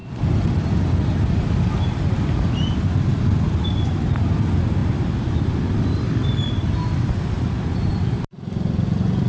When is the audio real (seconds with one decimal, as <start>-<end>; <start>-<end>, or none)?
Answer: 0.5-9.3